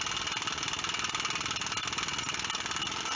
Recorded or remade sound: recorded